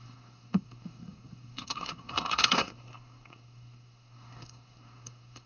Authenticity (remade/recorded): remade